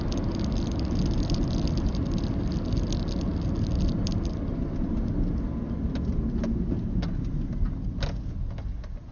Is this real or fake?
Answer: real